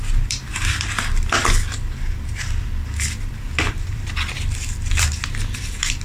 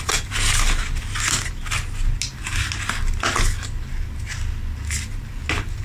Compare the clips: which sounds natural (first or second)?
second